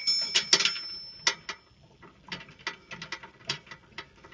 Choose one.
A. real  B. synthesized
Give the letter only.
A